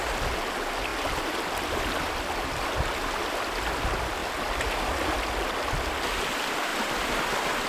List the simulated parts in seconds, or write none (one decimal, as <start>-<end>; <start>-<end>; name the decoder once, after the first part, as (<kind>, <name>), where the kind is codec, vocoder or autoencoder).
0.9-2.1 (vocoder, BigVGAN v2); 4.2-5.8; 6.7-7.3